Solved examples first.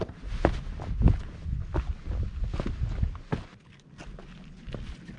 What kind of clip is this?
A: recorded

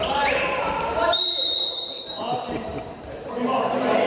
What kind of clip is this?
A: remade